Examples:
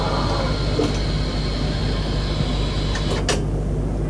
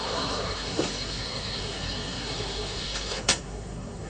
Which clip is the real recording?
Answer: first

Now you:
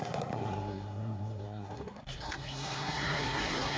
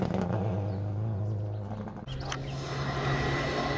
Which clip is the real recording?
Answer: second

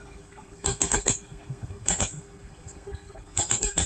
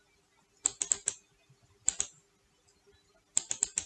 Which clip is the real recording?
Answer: second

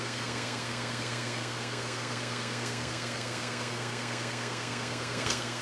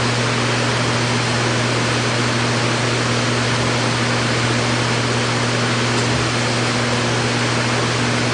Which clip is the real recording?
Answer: second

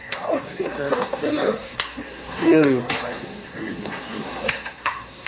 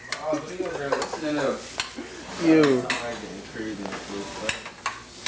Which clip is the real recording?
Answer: second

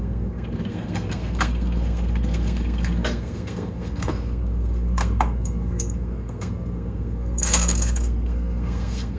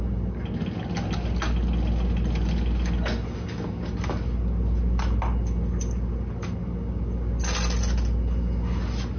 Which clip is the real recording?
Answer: second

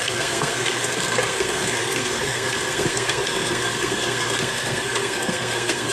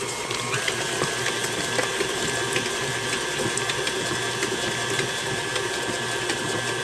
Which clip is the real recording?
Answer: second